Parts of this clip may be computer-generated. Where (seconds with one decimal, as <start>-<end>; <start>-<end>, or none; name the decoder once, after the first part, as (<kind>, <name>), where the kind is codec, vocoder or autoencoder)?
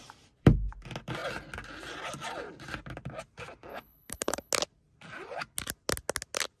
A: 3.7-4.5 (codec, HILCodec)